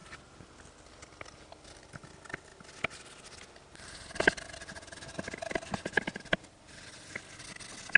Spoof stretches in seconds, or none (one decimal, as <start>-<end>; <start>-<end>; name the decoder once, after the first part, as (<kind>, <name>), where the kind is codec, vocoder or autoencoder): 0.0-0.5 (vocoder, BigVGAN v2)